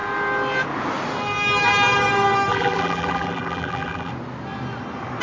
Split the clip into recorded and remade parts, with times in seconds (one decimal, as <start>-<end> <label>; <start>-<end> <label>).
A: 0.0-2.5 recorded; 2.5-4.1 remade; 4.1-5.2 recorded